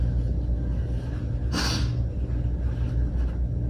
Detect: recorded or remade recorded